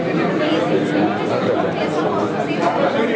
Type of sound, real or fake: real